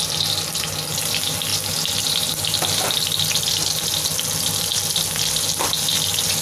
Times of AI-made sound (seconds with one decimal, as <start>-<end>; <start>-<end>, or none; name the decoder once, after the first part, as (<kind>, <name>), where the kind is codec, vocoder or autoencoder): none